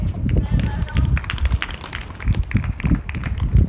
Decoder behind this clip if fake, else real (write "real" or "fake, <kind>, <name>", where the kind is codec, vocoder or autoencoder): real